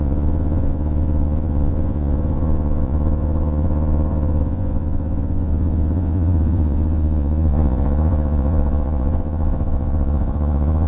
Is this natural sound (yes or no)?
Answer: no